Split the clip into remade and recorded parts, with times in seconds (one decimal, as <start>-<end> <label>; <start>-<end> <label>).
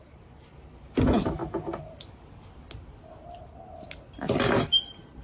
0.0-1.4 remade; 1.4-4.5 recorded; 4.5-5.2 remade